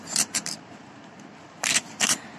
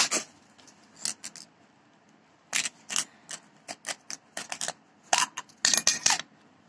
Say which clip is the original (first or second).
second